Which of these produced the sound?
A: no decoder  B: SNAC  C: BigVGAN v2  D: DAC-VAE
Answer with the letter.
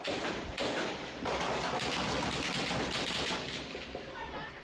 A